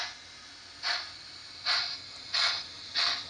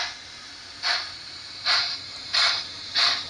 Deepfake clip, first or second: second